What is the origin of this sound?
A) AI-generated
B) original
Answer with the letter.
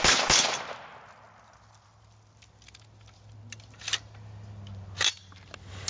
B